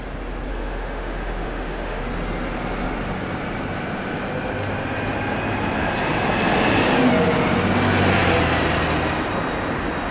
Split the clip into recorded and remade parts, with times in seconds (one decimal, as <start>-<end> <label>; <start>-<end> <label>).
0.0-0.5 recorded; 0.5-2.0 remade; 2.0-10.1 recorded